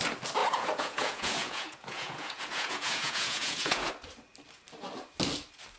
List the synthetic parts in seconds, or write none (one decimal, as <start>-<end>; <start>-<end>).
0.4-3.9